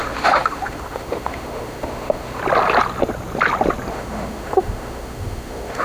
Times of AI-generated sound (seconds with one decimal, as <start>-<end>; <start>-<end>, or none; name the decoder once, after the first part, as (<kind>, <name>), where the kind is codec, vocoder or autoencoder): 0.0-2.4 (autoencoder, DAC-VAE); 3.9-5.8